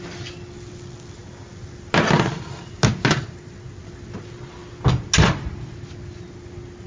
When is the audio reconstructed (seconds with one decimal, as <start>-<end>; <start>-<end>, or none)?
none